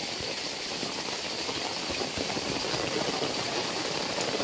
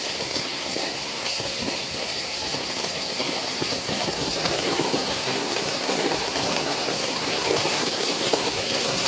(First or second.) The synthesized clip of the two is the second